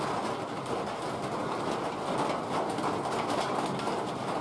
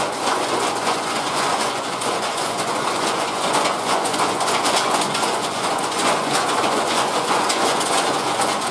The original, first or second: first